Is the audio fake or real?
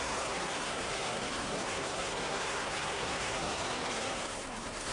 fake